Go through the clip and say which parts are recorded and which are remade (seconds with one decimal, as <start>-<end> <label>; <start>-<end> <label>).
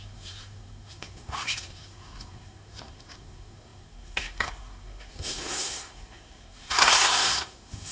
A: 0.0-7.9 remade